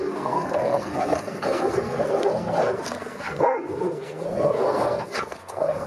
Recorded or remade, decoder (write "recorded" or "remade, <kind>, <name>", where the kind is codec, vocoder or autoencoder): remade, codec, SNAC